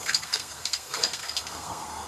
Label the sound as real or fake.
fake